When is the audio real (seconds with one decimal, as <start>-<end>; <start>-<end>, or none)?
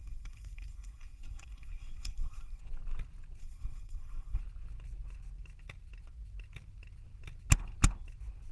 2.6-3.4; 4.4-8.5